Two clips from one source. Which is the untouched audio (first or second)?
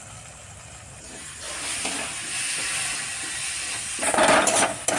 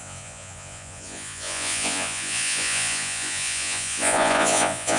first